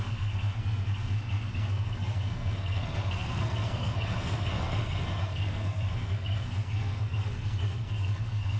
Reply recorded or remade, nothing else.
remade